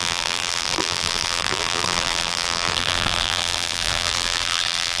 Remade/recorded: remade